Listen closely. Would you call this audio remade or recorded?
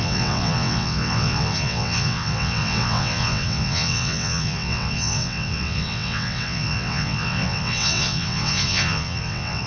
remade